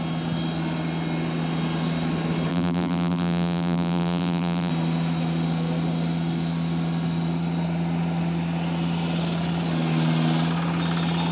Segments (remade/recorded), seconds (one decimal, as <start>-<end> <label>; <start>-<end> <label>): 0.0-2.5 recorded; 2.5-4.7 remade; 4.7-11.3 recorded

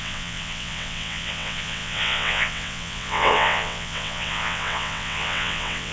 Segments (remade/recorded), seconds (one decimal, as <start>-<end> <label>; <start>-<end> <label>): 0.0-5.9 remade

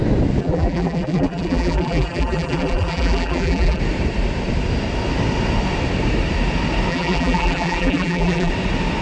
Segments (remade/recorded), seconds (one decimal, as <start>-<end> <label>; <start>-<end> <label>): 0.0-0.4 recorded; 0.4-3.8 remade; 3.8-6.9 recorded; 6.9-8.5 remade; 8.5-9.0 recorded

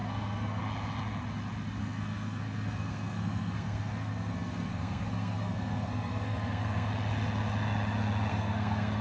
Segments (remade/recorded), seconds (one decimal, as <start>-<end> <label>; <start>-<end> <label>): 0.0-0.6 remade; 0.6-1.8 recorded; 1.8-6.9 remade; 6.9-8.3 recorded; 8.3-9.0 remade

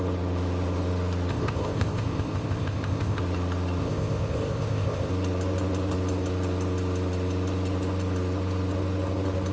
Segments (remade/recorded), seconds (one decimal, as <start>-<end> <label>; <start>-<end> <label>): 0.0-1.3 recorded; 1.3-3.2 remade; 3.2-3.8 recorded; 3.8-5.1 remade; 5.1-9.5 recorded

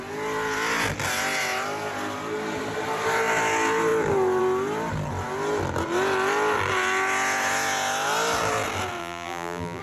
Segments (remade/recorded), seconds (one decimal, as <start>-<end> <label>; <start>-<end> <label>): 0.0-9.0 recorded; 9.0-9.8 remade

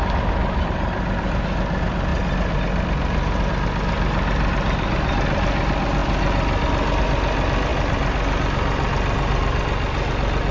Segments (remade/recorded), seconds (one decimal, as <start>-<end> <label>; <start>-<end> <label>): 0.0-10.5 recorded